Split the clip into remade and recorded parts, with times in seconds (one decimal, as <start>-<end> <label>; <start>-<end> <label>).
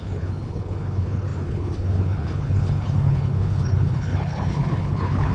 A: 0.0-5.3 remade